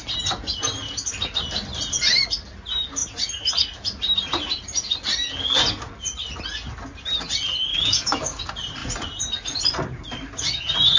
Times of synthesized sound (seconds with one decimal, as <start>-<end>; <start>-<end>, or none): 7.7-8.4